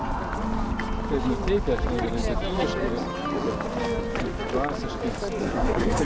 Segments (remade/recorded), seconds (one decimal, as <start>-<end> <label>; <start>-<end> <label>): 0.0-5.4 recorded; 5.4-6.0 remade